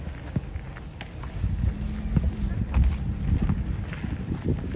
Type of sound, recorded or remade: recorded